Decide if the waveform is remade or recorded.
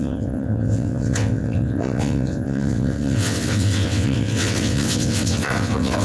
remade